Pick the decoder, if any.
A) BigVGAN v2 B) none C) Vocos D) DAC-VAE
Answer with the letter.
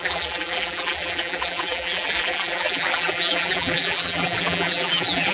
A